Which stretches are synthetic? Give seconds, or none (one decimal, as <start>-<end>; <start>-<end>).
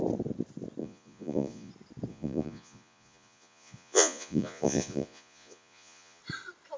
0.8-1.7; 2.1-6.2